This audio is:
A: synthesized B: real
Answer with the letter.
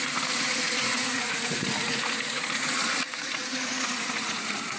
A